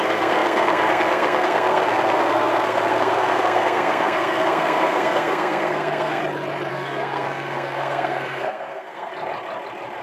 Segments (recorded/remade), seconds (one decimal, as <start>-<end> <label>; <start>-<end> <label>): 0.0-6.2 remade; 6.2-6.7 recorded; 6.7-9.1 remade; 9.1-10.0 recorded